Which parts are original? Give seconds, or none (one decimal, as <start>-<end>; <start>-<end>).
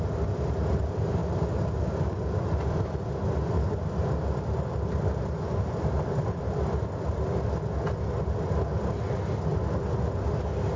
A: 0.0-10.8